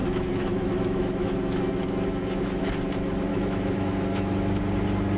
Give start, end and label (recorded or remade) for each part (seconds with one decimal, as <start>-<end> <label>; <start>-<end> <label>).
0.0-2.6 remade; 2.6-3.3 recorded; 3.3-4.6 remade; 4.6-5.2 recorded